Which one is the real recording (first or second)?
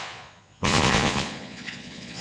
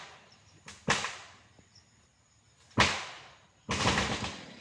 second